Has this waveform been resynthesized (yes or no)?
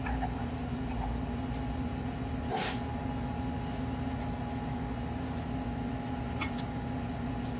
no